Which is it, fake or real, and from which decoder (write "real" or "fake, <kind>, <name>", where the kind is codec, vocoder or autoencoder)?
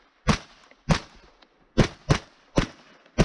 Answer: real